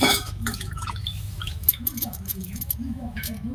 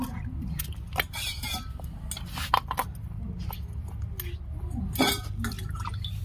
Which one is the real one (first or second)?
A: second